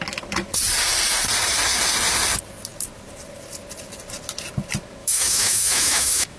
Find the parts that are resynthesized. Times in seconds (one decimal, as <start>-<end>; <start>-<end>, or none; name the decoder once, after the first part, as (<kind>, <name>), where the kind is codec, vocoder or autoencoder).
5.0-6.4 (autoencoder, DAC-VAE)